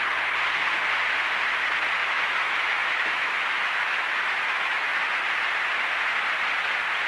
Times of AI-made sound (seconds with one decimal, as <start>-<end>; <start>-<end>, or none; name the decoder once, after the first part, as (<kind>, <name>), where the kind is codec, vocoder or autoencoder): 2.0-5.0 (autoencoder, DAC-VAE)